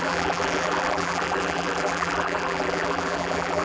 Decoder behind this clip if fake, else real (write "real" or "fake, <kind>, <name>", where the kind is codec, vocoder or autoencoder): fake, vocoder, BigVGAN v2